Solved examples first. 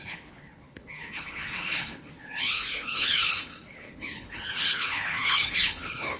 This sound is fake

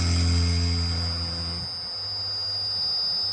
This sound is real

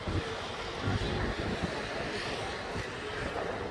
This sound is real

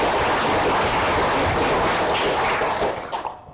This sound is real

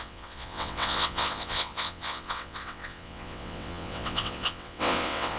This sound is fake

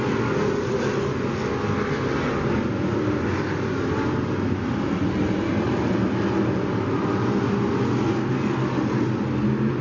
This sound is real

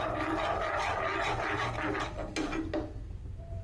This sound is real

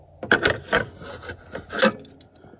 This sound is real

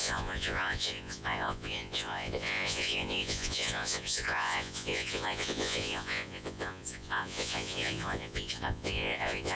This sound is fake